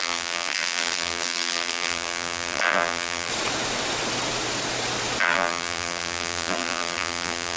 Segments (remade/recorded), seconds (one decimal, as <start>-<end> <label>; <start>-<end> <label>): 0.0-3.3 remade; 3.3-5.2 recorded; 5.2-7.6 remade